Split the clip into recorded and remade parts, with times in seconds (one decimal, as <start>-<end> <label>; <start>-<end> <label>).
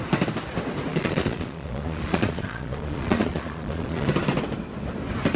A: 0.0-0.9 recorded; 0.9-4.1 remade; 4.1-5.4 recorded